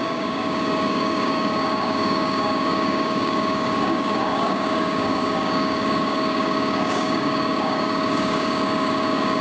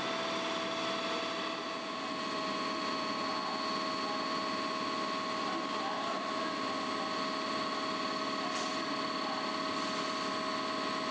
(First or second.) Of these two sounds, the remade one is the first